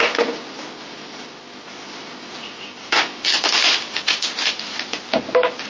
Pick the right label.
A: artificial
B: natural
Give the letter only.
A